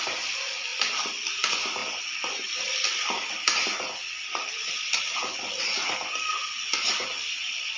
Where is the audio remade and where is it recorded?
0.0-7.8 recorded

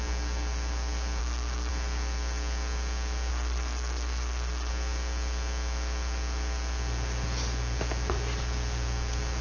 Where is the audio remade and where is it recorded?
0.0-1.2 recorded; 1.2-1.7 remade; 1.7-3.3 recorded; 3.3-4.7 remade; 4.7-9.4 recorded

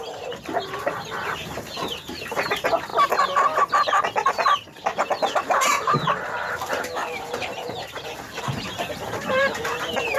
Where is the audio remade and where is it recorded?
0.0-2.9 remade; 2.9-4.3 recorded; 4.3-10.2 remade